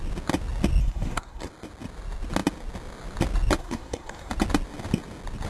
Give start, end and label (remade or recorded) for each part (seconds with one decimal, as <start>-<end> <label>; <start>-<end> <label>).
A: 0.0-0.8 recorded; 0.8-1.5 remade; 1.5-3.6 recorded; 3.6-4.3 remade; 4.3-5.5 recorded